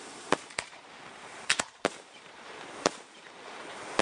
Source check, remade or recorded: remade